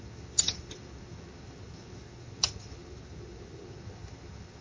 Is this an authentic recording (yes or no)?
no